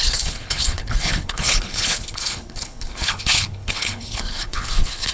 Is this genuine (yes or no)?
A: no